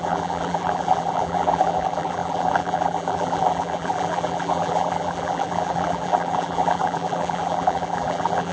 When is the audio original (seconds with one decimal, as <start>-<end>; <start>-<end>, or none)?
none